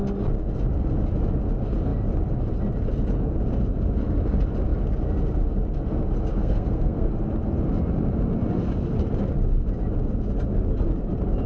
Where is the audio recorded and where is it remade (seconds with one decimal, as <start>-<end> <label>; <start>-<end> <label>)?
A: 0.0-6.3 recorded; 6.3-7.1 remade; 7.1-11.5 recorded